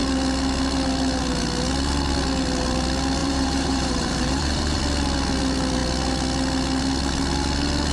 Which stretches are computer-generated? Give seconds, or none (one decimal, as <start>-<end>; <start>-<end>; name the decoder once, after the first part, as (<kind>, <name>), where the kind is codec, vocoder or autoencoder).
3.2-4.8 (vocoder, BigVGAN v2)